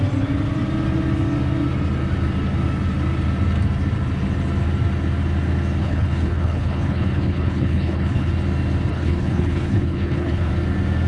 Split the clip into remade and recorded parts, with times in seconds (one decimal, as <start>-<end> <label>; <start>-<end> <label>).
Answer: 0.0-5.8 recorded; 5.8-8.3 remade; 8.3-8.9 recorded; 8.9-10.5 remade; 10.5-11.1 recorded